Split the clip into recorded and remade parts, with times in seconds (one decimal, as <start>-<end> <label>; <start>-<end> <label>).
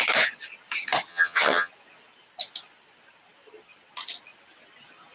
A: 0.0-1.1 recorded; 1.1-1.7 remade; 1.7-5.1 recorded